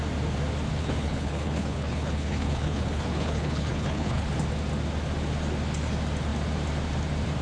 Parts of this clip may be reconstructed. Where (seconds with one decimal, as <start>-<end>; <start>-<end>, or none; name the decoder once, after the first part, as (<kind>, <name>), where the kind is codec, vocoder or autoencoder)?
0.7-4.3 (codec, HILCodec)